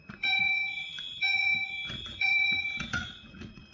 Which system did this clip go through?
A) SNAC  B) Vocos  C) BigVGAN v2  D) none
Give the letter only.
B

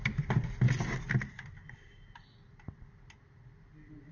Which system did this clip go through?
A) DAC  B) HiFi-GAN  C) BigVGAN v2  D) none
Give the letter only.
D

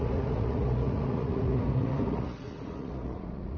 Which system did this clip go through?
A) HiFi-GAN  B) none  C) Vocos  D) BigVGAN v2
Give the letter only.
C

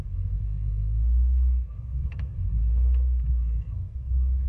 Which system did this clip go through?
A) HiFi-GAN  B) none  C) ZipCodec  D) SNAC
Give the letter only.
D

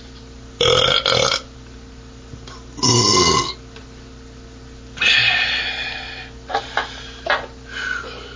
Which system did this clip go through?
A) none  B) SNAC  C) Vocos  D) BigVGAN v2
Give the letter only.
A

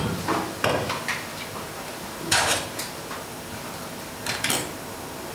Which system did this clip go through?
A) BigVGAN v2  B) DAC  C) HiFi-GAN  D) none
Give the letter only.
A